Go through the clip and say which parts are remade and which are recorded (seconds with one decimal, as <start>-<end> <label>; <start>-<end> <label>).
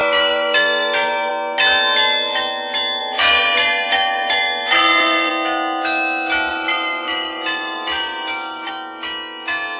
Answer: 0.0-1.3 remade; 1.3-3.0 recorded; 3.0-5.3 remade; 5.3-6.5 recorded; 6.5-8.7 remade; 8.7-9.8 recorded